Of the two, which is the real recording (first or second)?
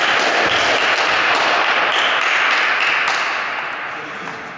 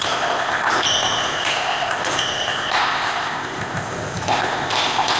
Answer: first